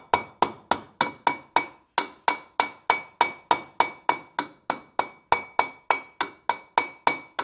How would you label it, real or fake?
real